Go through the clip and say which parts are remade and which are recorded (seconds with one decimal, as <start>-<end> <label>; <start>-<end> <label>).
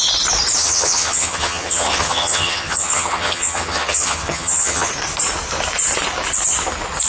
0.0-0.6 recorded; 0.6-4.9 remade; 4.9-7.1 recorded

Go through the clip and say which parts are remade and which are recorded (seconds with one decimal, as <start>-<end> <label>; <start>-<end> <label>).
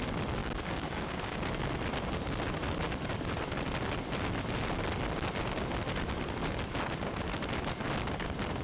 0.0-0.4 recorded; 0.4-1.4 remade; 1.4-8.6 recorded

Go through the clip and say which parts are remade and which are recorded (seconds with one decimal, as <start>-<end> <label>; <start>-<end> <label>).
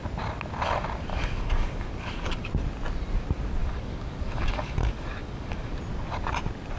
0.0-1.1 recorded; 1.1-2.5 remade; 2.5-3.6 recorded; 3.6-5.7 remade; 5.7-6.8 recorded